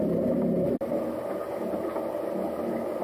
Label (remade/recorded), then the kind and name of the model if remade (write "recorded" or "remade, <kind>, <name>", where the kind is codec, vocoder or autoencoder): recorded